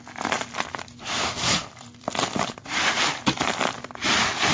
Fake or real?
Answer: fake